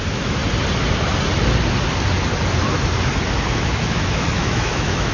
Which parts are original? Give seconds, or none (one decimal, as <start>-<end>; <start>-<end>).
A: 0.4-3.5